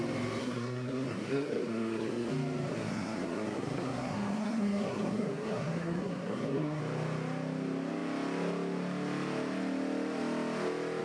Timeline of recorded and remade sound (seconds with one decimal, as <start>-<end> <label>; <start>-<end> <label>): 0.0-0.4 recorded; 0.4-2.3 remade; 2.3-2.7 recorded; 2.7-6.8 remade; 6.8-11.0 recorded